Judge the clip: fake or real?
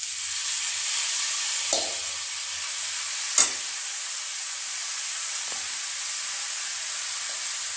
real